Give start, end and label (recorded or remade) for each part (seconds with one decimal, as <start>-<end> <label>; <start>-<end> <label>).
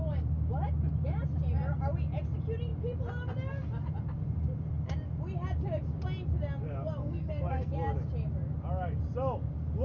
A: 0.0-7.0 recorded; 7.0-7.7 remade; 7.7-9.8 recorded